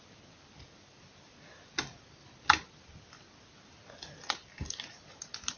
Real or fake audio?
real